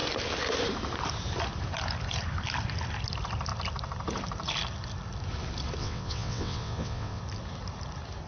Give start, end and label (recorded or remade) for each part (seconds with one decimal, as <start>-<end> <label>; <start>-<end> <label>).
0.0-5.8 recorded; 5.8-7.2 remade; 7.2-8.3 recorded